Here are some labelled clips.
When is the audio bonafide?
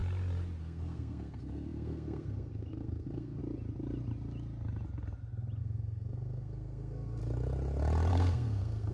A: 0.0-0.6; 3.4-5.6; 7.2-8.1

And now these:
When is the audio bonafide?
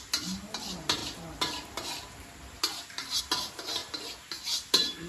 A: 0.0-5.1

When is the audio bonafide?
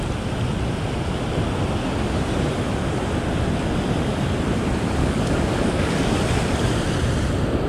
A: 0.0-5.0; 6.2-7.7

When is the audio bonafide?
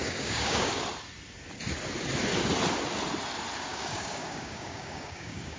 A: 0.8-3.7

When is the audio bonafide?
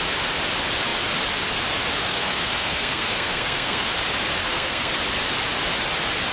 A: 0.0-2.0; 3.9-4.4; 4.9-6.3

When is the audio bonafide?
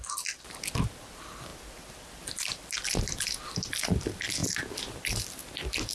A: 0.0-5.9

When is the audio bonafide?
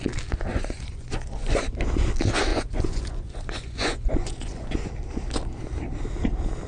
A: 0.0-0.5; 1.6-2.5; 4.9-6.7